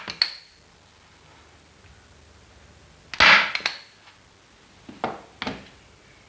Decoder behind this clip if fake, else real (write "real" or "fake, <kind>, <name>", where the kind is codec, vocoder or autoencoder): real